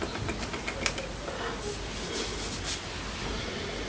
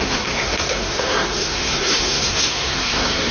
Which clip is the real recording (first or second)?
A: first